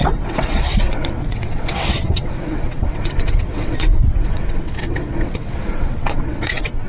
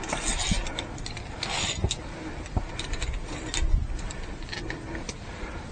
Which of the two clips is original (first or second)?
second